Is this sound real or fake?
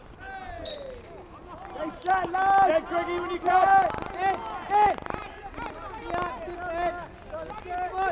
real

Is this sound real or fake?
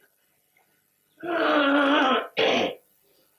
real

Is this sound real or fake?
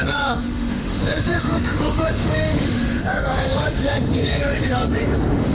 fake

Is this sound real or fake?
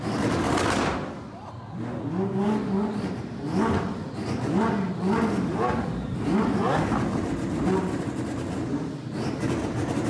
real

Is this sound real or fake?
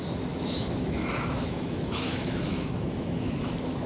fake